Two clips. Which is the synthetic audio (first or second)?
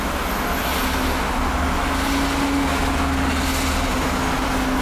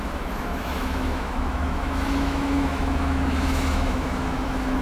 second